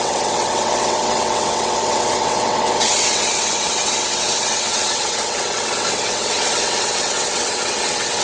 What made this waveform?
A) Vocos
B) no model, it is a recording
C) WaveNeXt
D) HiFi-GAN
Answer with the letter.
C